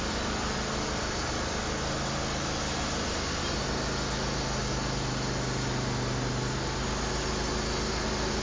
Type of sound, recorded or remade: recorded